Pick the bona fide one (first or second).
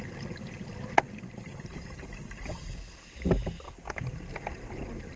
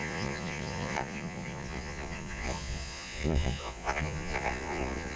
first